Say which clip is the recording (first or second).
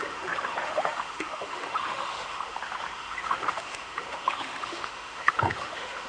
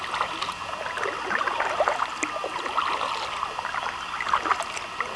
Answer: second